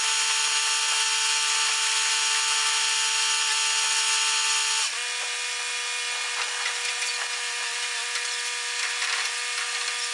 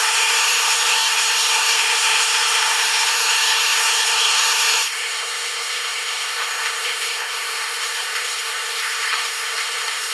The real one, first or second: first